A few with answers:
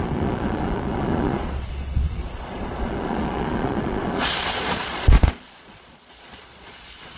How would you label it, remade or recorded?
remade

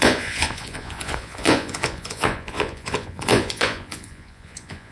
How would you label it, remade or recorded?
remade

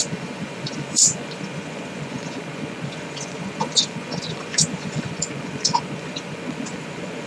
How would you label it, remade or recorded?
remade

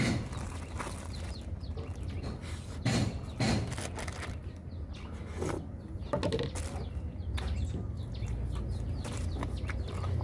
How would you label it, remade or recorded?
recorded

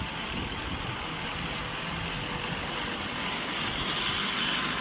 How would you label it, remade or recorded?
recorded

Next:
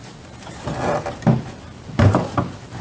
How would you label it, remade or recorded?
recorded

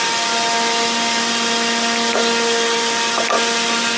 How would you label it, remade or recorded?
recorded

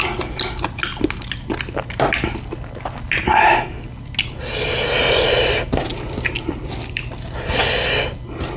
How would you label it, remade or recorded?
recorded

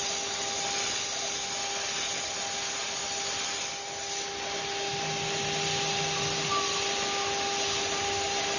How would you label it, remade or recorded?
recorded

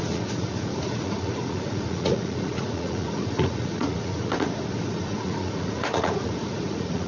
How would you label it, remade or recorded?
remade